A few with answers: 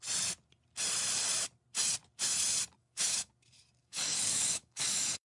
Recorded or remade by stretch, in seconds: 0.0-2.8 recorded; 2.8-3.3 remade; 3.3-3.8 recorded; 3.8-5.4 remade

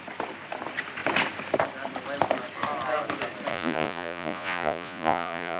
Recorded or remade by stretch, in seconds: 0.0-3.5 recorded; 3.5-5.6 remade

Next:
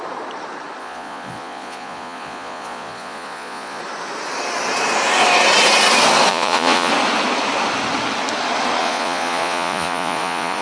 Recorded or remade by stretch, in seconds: 0.0-0.8 recorded; 0.8-3.8 remade; 3.8-6.3 recorded; 6.3-6.9 remade; 6.9-8.8 recorded; 8.8-10.6 remade

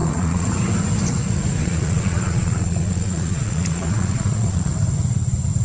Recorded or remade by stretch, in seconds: 0.0-0.5 remade; 0.5-1.6 recorded; 1.6-4.7 remade; 4.7-5.6 recorded

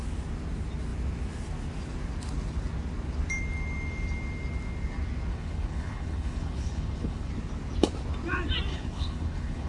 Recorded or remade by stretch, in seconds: 0.0-5.3 recorded; 5.3-7.3 remade; 7.3-8.7 recorded; 8.7-9.7 remade